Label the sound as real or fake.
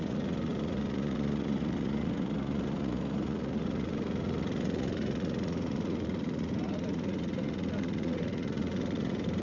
fake